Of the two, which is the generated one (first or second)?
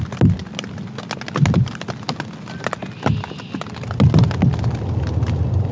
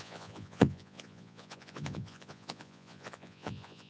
second